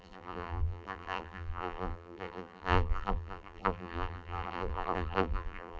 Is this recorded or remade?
remade